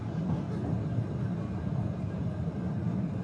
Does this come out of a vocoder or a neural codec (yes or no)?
yes